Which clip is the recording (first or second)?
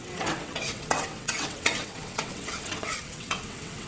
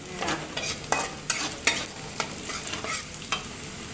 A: second